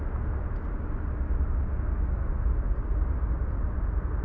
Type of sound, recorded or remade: recorded